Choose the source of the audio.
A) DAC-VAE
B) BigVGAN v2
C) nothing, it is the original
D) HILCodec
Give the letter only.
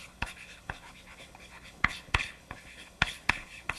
D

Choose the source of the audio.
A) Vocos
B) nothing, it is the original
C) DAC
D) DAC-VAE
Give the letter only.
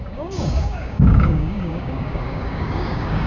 C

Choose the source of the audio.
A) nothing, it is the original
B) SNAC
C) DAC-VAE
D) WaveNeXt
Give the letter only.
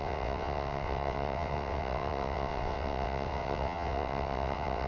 D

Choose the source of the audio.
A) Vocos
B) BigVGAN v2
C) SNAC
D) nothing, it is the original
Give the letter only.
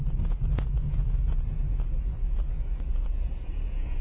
A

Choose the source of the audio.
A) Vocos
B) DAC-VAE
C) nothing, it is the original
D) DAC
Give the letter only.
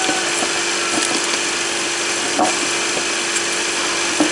C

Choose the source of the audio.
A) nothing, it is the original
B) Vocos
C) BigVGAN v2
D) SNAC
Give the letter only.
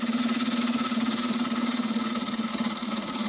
B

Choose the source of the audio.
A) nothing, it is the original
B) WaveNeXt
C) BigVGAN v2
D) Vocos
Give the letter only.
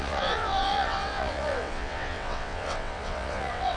B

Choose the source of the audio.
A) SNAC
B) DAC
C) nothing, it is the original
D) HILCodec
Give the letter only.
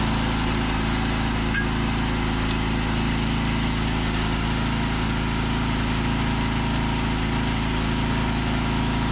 C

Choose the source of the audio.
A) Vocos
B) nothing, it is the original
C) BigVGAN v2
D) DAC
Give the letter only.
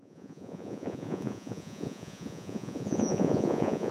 A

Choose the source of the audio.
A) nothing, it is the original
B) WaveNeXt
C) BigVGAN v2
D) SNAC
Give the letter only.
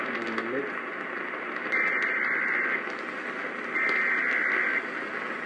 A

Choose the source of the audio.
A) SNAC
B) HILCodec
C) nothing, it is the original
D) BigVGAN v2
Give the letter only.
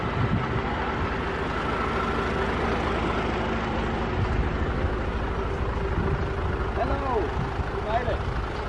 C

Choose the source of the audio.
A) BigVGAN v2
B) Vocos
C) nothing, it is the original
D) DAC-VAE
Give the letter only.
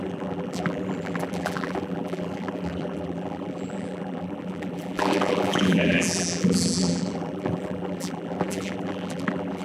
A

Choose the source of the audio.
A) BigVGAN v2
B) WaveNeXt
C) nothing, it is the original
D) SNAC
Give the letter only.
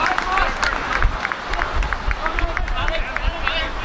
C